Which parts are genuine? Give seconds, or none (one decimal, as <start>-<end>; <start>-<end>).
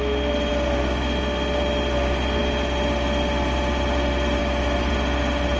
0.0-4.4; 4.9-5.6